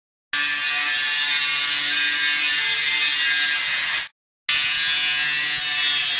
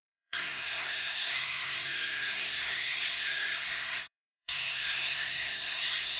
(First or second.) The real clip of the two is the first